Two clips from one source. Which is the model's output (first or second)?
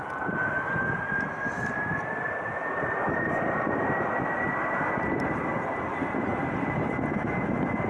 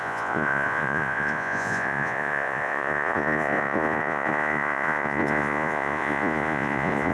second